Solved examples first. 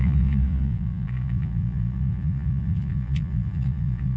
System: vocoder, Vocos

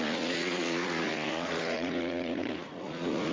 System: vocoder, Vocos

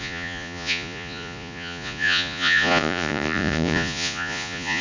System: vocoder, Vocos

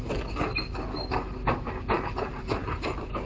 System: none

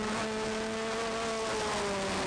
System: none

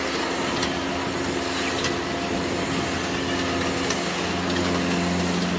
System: none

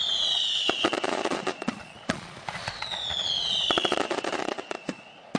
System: vocoder, Vocos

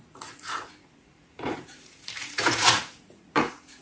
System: vocoder, Vocos